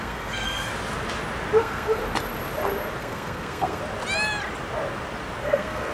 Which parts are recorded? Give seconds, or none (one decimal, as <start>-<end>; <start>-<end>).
0.7-1.6; 2.0-3.0; 3.8-5.4

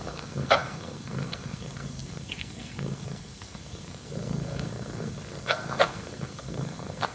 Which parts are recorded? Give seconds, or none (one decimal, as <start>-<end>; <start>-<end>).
none

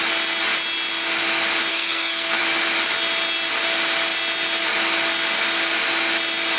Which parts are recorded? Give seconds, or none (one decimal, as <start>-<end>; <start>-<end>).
0.0-1.7; 2.4-6.6

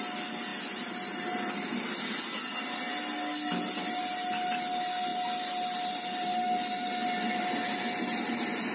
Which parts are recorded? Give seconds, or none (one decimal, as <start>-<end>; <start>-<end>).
0.0-8.7

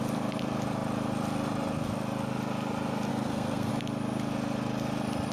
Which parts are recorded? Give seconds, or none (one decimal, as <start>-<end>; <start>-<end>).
0.0-3.1; 3.7-5.3

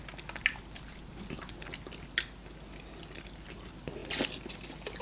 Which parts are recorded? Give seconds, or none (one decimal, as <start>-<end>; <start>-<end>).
0.0-5.0